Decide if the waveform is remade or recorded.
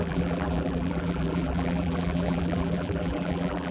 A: remade